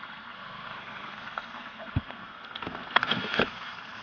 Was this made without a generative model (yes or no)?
no